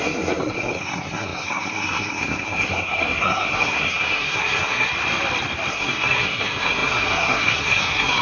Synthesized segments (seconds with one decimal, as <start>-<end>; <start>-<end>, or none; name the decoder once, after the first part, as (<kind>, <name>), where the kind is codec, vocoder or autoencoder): 0.0-4.9 (codec, SNAC); 5.7-8.2